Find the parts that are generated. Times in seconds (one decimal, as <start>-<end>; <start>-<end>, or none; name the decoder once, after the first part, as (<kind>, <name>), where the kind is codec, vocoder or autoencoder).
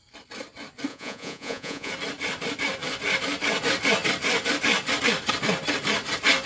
0.9-1.9 (vocoder, Vocos)